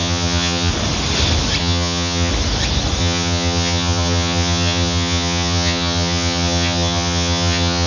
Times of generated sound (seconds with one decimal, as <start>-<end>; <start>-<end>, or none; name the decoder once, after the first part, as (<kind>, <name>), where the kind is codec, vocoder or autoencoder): 0.0-0.7 (vocoder, HiFi-GAN); 1.6-2.3; 3.0-7.9